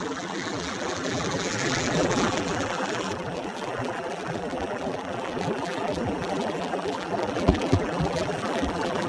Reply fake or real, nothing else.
fake